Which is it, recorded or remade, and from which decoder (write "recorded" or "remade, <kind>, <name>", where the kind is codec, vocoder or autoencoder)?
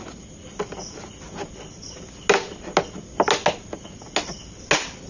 recorded